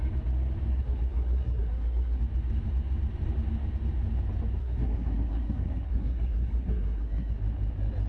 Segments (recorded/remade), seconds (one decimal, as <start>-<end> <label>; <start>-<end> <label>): 0.0-0.7 recorded; 0.7-2.2 remade; 2.2-4.6 recorded; 4.6-7.3 remade; 7.3-8.1 recorded